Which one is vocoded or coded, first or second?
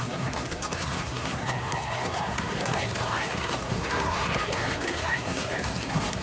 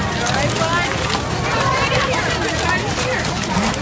first